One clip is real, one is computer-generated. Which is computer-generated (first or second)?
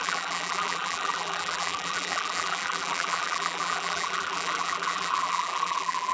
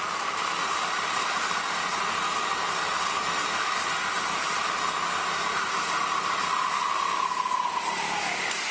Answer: first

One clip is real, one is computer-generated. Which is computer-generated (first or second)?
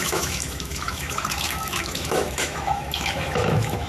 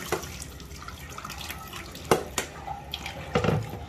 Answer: first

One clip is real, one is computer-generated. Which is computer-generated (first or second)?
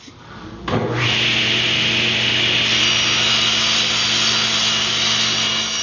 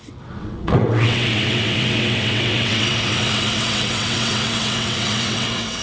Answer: second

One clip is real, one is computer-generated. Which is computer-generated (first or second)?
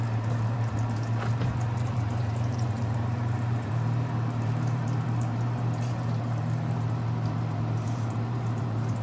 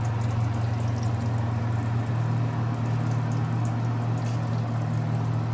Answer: first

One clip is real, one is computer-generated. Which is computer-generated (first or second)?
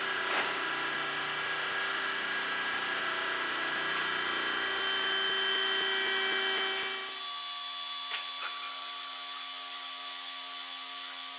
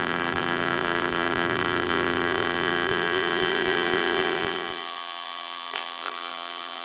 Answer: second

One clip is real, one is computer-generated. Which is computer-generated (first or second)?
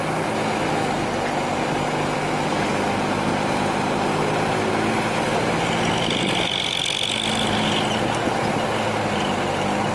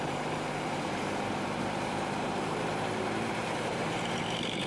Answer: second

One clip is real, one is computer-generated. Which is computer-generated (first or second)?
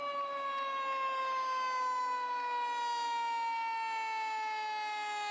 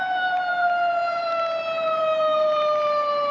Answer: second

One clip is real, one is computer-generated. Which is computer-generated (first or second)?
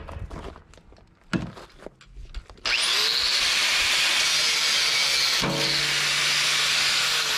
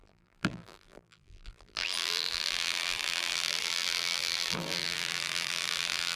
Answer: second